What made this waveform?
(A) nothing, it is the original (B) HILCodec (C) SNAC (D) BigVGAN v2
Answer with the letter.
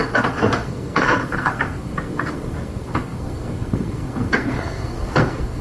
C